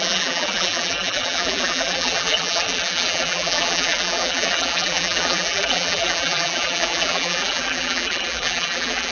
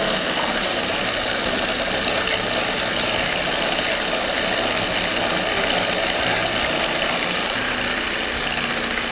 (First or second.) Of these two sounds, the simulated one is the first